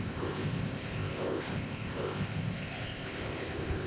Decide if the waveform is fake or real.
fake